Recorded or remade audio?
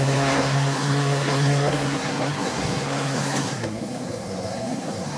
remade